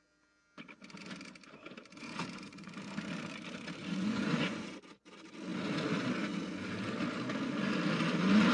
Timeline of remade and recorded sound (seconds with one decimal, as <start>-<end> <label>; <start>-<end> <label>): 0.0-2.0 recorded; 2.0-2.7 remade; 2.7-3.8 recorded; 3.8-4.8 remade; 4.8-8.5 recorded